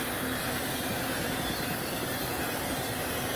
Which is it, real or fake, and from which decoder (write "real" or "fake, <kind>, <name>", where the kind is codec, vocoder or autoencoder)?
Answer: real